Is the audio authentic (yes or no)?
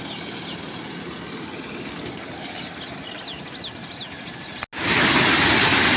yes